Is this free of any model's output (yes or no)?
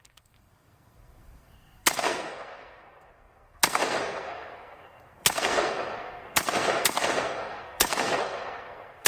no